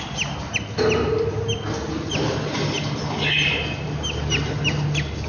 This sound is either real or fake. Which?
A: real